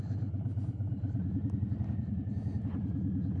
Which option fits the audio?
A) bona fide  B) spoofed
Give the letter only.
B